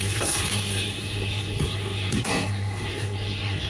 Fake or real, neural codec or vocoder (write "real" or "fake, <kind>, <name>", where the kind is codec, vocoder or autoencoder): fake, codec, SNAC